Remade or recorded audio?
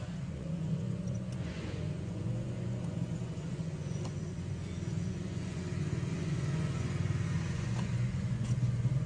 remade